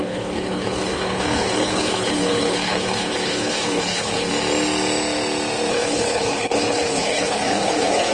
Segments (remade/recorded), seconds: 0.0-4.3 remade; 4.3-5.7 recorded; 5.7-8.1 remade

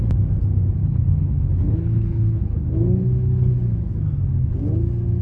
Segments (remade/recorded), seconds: 0.0-0.8 recorded; 0.8-3.9 remade; 3.9-5.2 recorded

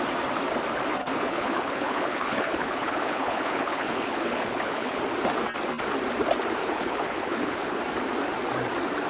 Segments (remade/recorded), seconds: 0.0-1.0 recorded; 1.0-5.0 remade; 5.0-6.6 recorded; 6.6-7.8 remade; 7.8-9.1 recorded

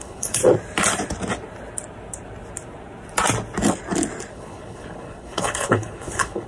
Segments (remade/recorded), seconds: 0.0-0.4 remade; 0.4-4.3 recorded; 4.3-6.5 remade

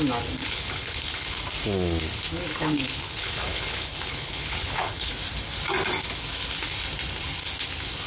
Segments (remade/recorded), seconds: 0.0-0.4 recorded; 0.4-1.4 remade; 1.4-2.5 recorded; 2.5-5.1 remade; 5.1-8.1 recorded

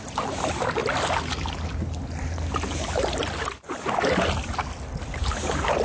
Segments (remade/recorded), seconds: 0.0-5.8 recorded

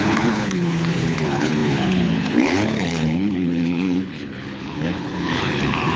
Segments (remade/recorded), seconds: 0.0-6.0 remade

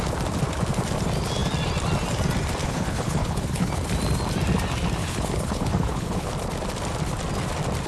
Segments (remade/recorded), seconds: 0.0-2.6 recorded; 2.6-3.7 remade; 3.7-5.0 recorded; 5.0-6.3 remade; 6.3-7.9 recorded